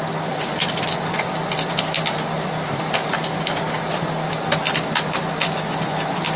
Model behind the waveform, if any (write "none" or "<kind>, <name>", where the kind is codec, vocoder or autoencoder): none